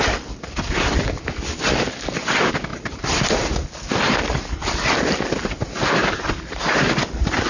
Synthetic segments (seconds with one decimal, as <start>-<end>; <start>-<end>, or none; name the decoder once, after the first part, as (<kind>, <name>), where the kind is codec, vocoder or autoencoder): 6.0-6.6 (vocoder, BigVGAN v2)